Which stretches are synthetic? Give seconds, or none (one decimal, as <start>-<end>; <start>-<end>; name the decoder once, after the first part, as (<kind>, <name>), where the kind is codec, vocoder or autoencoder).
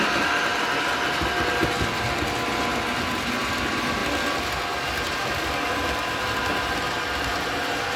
none